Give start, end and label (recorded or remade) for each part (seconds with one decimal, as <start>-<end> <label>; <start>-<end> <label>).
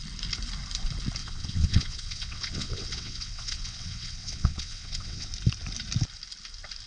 0.0-1.2 recorded; 1.2-5.3 remade; 5.3-6.9 recorded